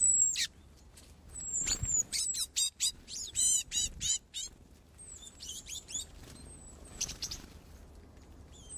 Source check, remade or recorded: remade